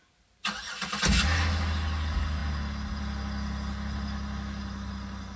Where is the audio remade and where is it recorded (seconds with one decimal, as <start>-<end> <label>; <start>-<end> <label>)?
0.0-5.4 recorded